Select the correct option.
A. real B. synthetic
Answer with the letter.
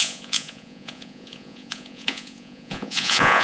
B